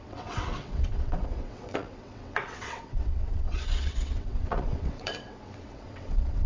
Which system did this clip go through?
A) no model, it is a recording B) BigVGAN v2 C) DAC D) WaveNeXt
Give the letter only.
D